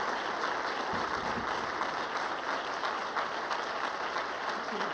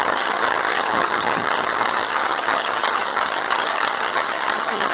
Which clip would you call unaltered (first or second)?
first